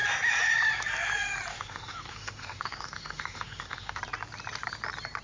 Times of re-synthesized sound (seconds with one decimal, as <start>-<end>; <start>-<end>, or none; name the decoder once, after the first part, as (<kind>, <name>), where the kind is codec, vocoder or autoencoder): 1.5-4.0 (autoencoder, DAC-VAE)